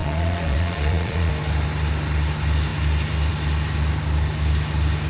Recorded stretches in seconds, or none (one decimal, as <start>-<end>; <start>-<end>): 1.3-5.1